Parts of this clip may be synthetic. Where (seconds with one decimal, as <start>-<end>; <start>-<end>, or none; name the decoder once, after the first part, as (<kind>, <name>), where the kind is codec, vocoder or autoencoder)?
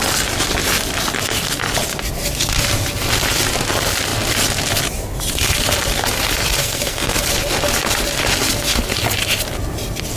6.6-7.3 (codec, SNAC)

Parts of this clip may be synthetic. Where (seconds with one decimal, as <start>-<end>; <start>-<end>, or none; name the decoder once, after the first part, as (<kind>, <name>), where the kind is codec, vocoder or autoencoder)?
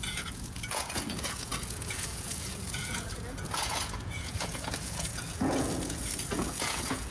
0.0-7.1 (vocoder, Vocos)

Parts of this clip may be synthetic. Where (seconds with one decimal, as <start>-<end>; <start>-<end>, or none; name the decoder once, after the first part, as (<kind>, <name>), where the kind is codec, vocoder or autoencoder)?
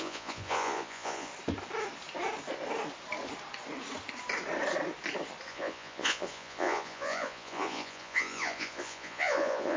0.0-1.3 (vocoder, Vocos); 5.5-9.8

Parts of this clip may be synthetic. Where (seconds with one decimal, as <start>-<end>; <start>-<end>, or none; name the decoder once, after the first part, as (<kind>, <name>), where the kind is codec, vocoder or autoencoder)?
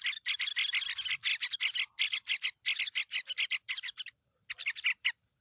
none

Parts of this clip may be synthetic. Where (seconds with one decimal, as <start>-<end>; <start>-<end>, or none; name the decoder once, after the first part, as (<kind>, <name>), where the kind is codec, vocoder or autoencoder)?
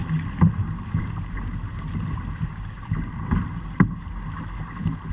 none